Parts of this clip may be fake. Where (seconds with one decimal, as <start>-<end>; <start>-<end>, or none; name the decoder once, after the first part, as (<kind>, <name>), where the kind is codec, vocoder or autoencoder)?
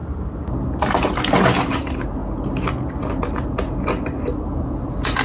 none